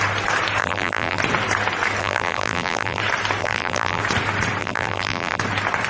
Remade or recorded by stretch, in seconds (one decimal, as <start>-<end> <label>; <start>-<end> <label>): 0.0-0.6 recorded; 0.6-1.2 remade; 1.2-2.0 recorded; 2.0-3.0 remade; 3.0-3.4 recorded; 3.4-4.0 remade; 4.0-4.6 recorded; 4.6-5.4 remade; 5.4-5.9 recorded